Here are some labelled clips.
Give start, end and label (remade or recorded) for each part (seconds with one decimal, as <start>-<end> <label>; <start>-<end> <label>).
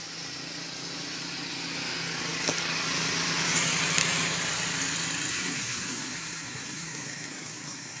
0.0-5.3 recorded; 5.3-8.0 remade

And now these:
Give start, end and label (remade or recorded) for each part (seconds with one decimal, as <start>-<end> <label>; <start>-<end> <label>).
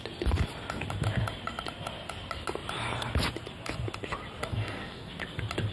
0.0-4.5 recorded; 4.5-5.1 remade; 5.1-5.7 recorded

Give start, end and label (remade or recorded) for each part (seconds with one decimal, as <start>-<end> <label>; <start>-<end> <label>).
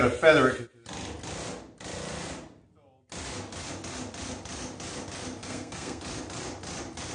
0.0-5.4 recorded; 5.4-6.0 remade; 6.0-7.1 recorded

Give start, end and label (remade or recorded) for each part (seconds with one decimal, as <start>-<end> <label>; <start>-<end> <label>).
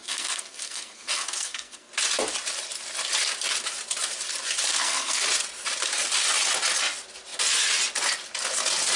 0.0-1.9 remade; 1.9-4.7 recorded; 4.7-5.2 remade; 5.2-9.0 recorded